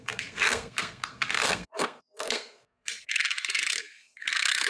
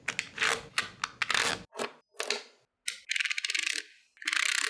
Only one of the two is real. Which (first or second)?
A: second